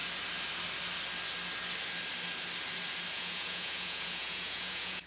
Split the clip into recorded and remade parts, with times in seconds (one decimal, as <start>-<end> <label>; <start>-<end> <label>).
0.0-3.1 recorded; 3.1-5.1 remade